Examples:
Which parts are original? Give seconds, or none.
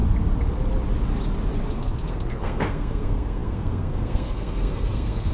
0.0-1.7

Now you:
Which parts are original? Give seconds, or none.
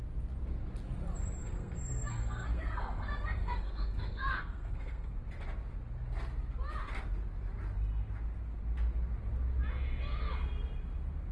0.0-1.4; 5.1-11.3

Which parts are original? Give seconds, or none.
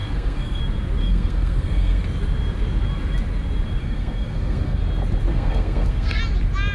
0.6-1.0; 2.0-3.8; 4.8-5.3; 6.2-6.7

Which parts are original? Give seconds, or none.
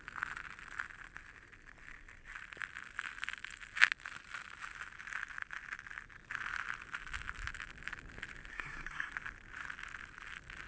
0.0-8.5; 9.1-10.7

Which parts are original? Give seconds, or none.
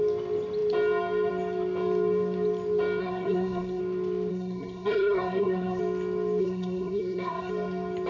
0.0-3.0; 3.8-4.3; 5.8-6.4; 7.5-8.1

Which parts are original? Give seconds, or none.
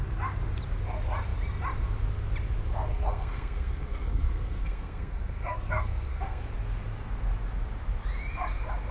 0.0-2.9; 6.4-8.9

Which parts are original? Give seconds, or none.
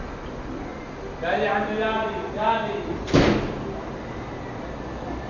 0.0-5.3